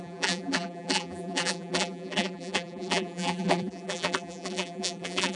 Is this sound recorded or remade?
remade